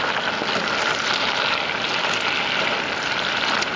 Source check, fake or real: real